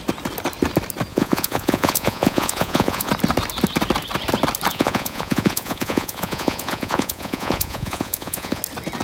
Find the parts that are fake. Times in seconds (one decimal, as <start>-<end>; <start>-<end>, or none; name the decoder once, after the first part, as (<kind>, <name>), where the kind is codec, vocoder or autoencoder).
1.1-3.1 (vocoder, Vocos); 4.7-8.6